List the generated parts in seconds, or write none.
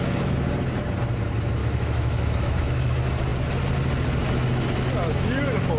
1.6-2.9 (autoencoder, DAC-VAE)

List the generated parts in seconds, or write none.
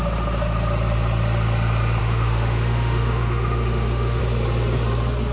2.0-4.2 (autoencoder, DAC-VAE)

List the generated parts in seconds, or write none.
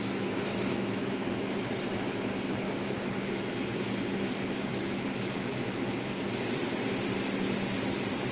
0.0-1.4 (autoencoder, DAC-VAE); 4.7-6.0